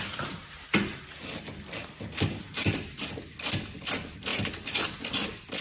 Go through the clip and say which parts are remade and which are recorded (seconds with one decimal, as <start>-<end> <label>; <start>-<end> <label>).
0.0-5.6 recorded